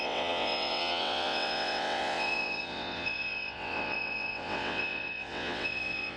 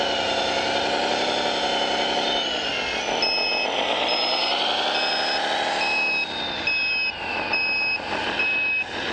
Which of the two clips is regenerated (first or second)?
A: first